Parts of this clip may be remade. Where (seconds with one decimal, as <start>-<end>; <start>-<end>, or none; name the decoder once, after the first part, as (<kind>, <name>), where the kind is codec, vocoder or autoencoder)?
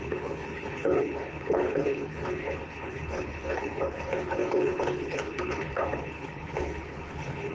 0.0-7.5 (codec, HILCodec)